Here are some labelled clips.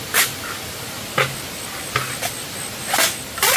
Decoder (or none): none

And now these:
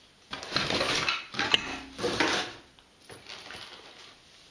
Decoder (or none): none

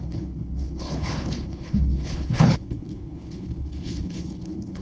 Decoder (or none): codec, HILCodec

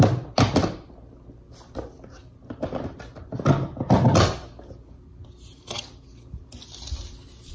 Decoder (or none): none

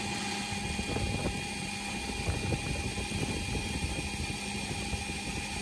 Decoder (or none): none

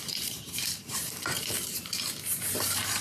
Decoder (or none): vocoder, BigVGAN v2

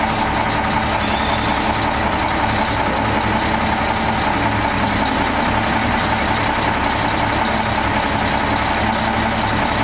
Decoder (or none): none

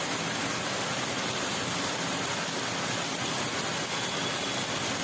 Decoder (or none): none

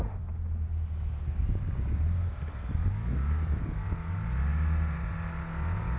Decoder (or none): none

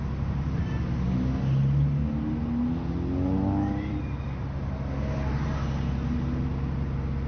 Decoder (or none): none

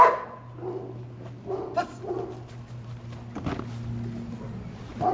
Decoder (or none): none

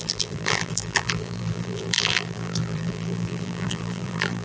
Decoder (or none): vocoder, BigVGAN v2